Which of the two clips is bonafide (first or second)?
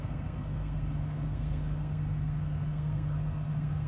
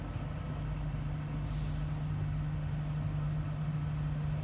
second